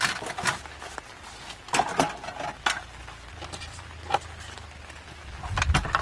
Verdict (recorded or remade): recorded